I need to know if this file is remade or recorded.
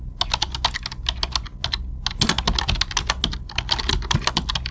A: recorded